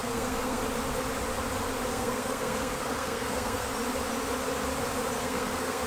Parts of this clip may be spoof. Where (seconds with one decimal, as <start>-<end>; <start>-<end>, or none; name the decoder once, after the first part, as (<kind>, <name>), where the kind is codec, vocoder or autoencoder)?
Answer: 0.0-0.6 (codec, SNAC); 1.9-3.7; 5.2-5.9

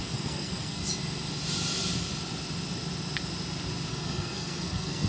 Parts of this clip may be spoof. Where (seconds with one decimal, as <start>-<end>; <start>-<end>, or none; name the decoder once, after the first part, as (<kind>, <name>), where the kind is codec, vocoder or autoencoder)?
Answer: 0.0-0.8 (codec, SNAC); 3.9-5.1

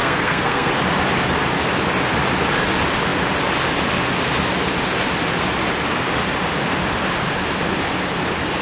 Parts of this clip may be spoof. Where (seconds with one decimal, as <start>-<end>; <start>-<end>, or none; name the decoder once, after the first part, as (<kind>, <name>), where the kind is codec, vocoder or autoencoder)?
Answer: 0.0-0.7 (codec, SNAC)

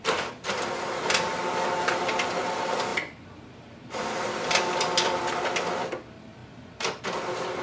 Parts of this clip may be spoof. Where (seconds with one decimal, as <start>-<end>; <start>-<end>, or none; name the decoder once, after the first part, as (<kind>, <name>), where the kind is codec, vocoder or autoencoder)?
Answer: none

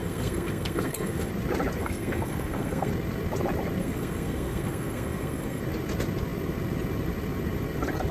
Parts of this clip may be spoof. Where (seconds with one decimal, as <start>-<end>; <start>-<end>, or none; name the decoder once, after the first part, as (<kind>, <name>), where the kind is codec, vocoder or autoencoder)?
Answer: 0.0-1.3 (codec, SNAC); 1.8-2.9; 3.8-5.6